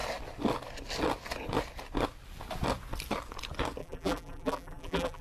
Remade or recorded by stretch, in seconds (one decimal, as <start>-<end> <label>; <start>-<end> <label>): 0.0-3.8 recorded; 3.8-5.2 remade